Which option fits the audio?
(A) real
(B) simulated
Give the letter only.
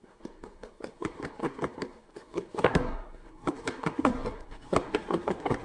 B